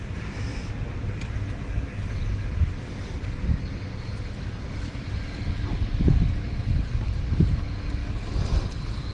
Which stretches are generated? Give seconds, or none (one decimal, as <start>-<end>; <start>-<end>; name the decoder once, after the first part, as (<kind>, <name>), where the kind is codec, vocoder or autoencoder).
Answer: 0.5-1.7 (vocoder, BigVGAN v2)